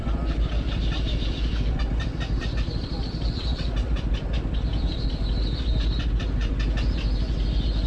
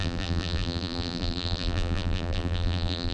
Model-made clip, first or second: second